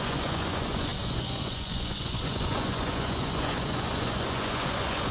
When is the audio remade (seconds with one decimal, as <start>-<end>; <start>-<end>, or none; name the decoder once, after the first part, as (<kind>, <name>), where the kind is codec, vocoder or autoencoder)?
0.0-5.1 (vocoder, Vocos)